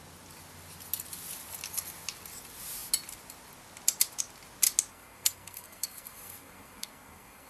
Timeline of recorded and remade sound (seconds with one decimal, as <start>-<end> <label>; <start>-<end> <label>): 0.0-4.9 recorded; 4.9-7.5 remade